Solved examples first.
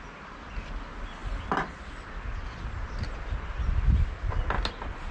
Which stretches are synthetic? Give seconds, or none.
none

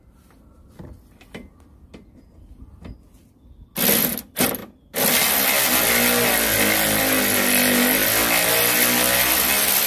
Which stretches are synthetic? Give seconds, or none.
none

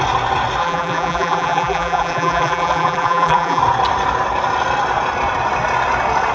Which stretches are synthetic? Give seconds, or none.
0.6-3.6 (vocoder, BigVGAN v2)

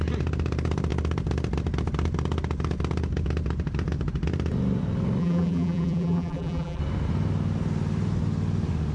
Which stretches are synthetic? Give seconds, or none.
5.2-6.8 (vocoder, BigVGAN v2)

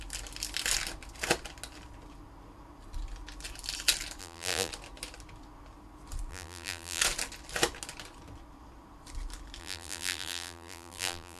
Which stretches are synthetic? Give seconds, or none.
4.2-4.7 (vocoder, BigVGAN v2); 6.3-7.0; 9.6-11.4

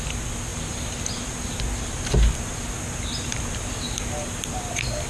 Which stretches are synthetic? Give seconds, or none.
3.1-3.7 (vocoder, BigVGAN v2)